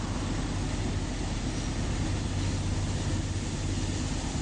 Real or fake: real